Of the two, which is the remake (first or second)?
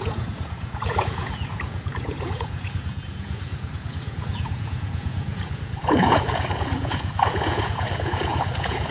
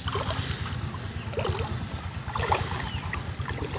first